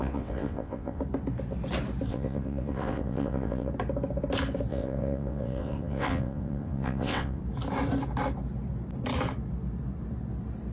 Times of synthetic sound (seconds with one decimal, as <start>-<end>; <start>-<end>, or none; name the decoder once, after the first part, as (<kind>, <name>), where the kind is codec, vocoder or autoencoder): 0.0-1.0 (vocoder, WaveNeXt); 2.1-3.7; 4.7-7.4